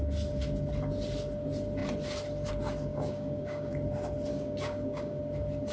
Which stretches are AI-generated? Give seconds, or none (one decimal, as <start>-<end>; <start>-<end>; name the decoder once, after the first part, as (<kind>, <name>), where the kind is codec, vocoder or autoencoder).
2.9-3.7 (codec, DAC); 4.3-5.2